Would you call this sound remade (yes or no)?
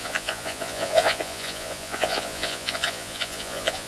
yes